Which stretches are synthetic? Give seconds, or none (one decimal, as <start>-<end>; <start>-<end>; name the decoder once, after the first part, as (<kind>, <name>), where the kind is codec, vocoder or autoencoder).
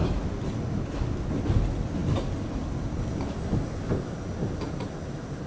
none